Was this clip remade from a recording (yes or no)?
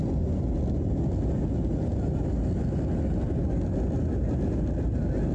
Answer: no